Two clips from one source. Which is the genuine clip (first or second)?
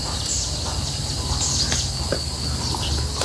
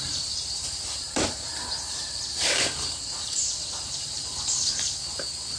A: first